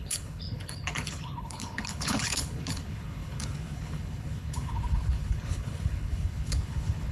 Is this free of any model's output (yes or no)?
no